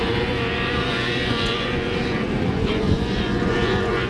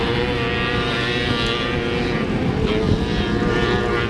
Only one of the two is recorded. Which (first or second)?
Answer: second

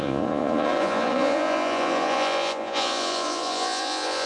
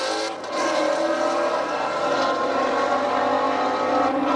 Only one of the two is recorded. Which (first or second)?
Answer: second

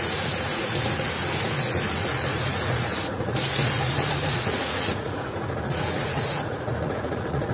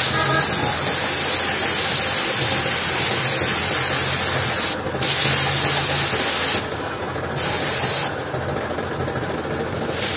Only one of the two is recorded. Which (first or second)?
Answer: second